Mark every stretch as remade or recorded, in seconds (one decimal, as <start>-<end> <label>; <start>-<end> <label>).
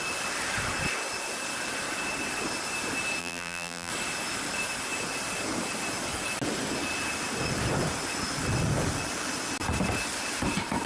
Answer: 0.0-3.2 recorded; 3.2-3.9 remade; 3.9-10.9 recorded